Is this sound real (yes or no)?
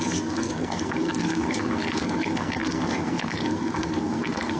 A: no